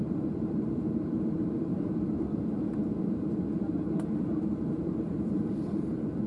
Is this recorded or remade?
remade